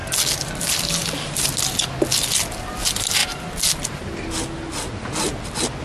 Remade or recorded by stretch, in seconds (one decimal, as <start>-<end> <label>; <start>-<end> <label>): 0.0-5.8 recorded